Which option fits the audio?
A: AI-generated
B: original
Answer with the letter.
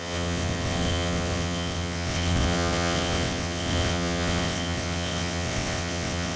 A